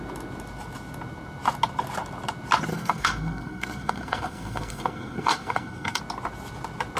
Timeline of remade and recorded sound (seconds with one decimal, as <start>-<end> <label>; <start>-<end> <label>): 0.0-2.7 recorded; 2.7-6.0 remade; 6.0-7.0 recorded